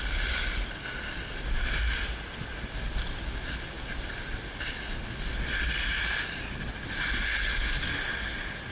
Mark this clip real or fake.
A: real